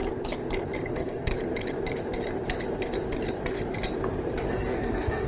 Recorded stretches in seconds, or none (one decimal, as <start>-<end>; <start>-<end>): 0.0-0.9; 1.3-4.5